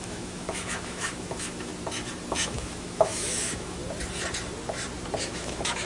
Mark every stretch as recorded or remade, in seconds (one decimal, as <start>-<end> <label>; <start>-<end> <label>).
0.0-1.7 remade; 1.7-2.3 recorded; 2.3-3.8 remade; 3.8-5.2 recorded; 5.2-5.8 remade